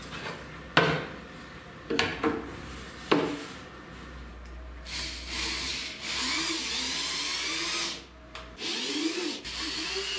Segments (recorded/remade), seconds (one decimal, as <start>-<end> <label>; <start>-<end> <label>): 0.0-10.2 recorded